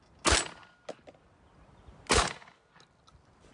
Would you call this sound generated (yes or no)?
no